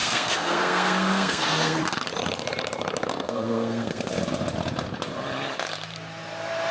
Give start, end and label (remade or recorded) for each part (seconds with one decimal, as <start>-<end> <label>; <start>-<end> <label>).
0.0-1.8 remade; 1.8-3.1 recorded; 3.1-4.1 remade; 4.1-6.7 recorded